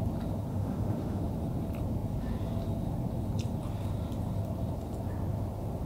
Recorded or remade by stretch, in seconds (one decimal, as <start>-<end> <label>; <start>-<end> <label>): 0.0-0.5 recorded; 0.5-1.3 remade; 1.3-5.9 recorded